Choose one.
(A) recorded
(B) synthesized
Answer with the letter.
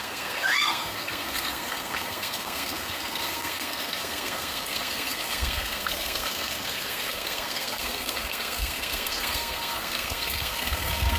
B